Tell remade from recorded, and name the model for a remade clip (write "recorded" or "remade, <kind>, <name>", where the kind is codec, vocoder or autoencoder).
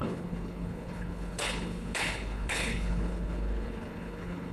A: remade, codec, HILCodec